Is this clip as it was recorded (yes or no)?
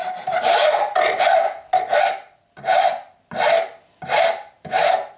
yes